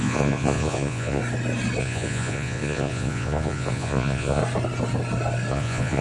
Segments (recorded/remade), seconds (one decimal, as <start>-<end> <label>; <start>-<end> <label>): 0.0-1.2 remade; 1.2-1.8 recorded; 1.8-4.4 remade; 4.4-5.5 recorded; 5.5-6.0 remade